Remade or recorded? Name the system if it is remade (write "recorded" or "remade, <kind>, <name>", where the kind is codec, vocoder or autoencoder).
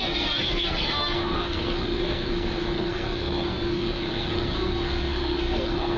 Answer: remade, codec, SNAC